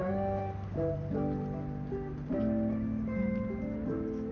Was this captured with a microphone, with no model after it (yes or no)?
yes